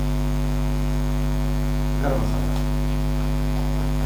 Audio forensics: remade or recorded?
remade